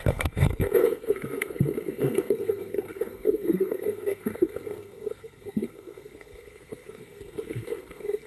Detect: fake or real fake